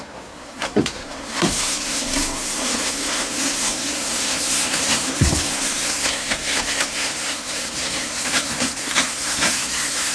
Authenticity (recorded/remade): remade